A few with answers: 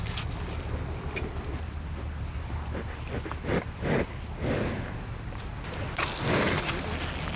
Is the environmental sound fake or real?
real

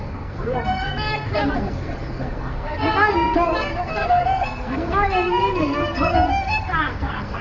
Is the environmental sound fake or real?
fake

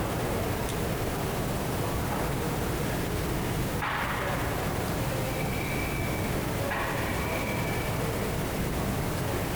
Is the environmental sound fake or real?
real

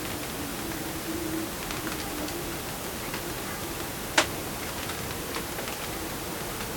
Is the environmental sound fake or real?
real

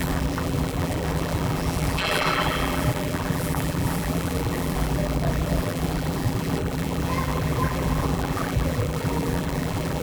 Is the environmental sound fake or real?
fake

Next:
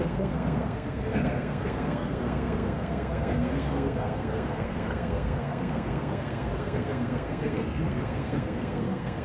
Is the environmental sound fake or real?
fake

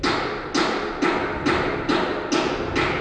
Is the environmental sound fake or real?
real